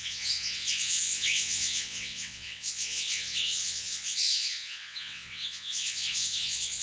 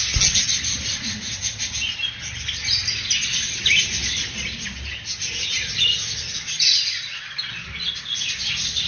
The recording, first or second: second